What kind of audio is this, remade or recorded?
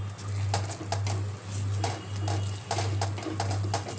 recorded